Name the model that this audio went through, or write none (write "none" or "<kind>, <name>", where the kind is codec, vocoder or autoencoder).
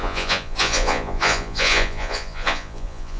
vocoder, Vocos